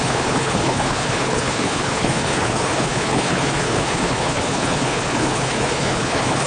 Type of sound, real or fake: fake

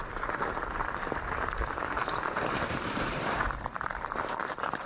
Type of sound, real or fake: fake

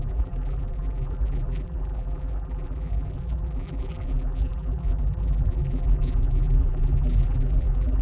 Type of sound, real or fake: fake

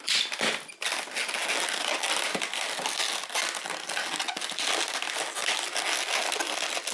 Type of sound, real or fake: real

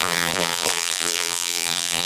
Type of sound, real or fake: fake